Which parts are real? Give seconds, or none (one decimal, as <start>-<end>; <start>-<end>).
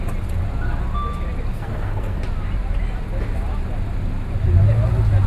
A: 0.0-1.5; 2.2-5.3